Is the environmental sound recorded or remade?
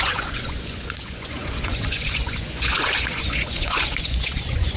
remade